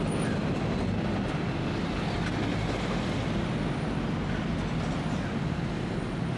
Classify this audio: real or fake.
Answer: real